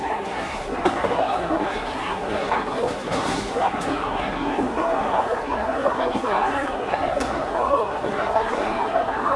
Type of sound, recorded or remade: remade